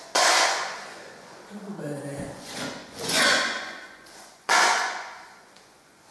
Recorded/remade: remade